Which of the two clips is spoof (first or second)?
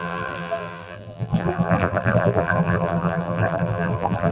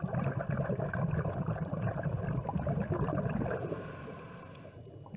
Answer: first